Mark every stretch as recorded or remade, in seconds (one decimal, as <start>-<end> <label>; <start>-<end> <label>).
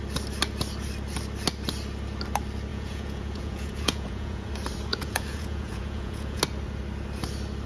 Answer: 0.0-2.7 recorded; 2.7-4.5 remade; 4.5-4.9 recorded; 4.9-6.4 remade; 6.4-7.7 recorded